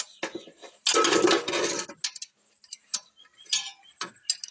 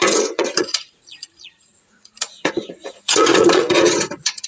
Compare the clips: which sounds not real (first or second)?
second